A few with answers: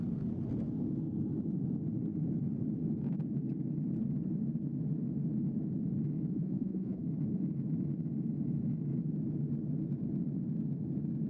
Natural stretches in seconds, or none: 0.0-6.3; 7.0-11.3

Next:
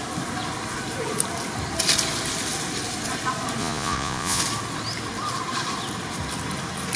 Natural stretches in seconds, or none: 0.0-3.6; 4.4-7.0

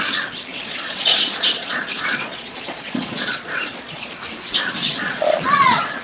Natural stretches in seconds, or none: 0.0-0.5; 4.1-4.8

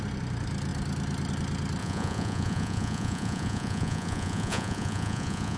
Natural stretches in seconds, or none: 0.0-1.8

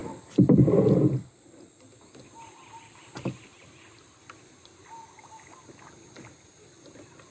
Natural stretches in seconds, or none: 0.0-7.3

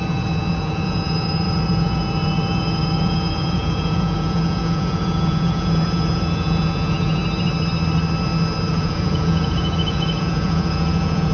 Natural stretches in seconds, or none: 7.2-8.7

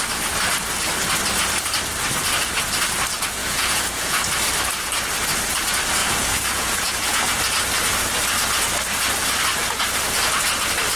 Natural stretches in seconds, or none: 0.0-3.4; 4.2-6.0; 7.4-11.0

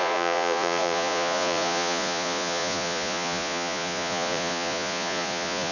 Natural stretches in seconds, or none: none